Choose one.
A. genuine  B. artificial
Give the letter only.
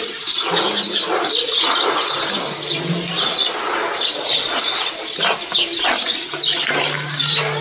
A